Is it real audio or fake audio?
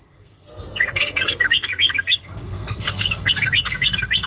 fake